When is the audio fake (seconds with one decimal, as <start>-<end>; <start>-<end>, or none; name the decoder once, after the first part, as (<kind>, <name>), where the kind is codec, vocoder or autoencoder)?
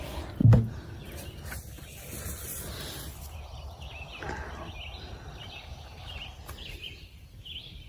none